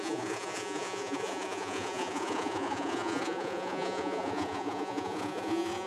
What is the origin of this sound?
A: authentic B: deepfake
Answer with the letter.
B